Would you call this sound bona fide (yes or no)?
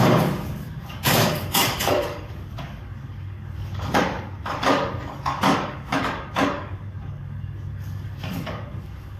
no